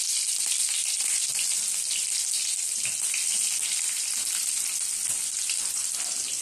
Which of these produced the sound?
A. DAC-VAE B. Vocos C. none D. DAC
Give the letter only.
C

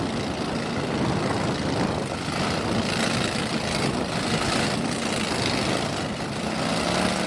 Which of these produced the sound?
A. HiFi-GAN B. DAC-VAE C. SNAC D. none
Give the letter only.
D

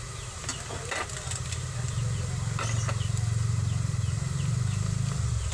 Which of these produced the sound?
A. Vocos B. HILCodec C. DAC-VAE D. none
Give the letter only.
D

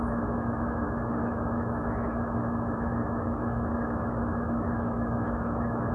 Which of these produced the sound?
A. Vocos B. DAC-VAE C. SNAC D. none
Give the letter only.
B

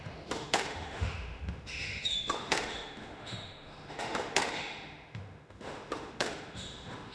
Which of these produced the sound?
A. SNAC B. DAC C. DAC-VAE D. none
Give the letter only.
C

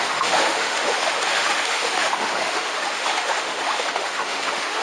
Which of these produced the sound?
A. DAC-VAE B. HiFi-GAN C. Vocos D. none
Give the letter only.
A